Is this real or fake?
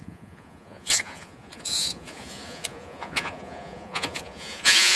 fake